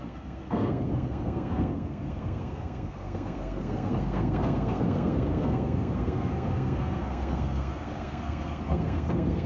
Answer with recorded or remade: remade